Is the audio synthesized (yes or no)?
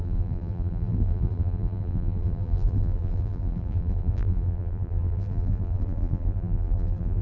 yes